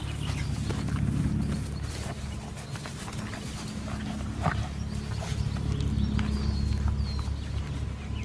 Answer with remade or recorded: recorded